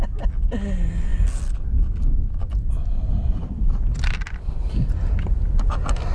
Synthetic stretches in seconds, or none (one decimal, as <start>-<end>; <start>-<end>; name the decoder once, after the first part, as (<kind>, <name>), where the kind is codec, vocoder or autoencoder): none